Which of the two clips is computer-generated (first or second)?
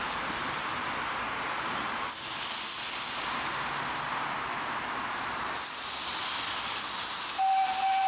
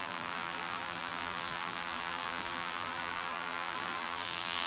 second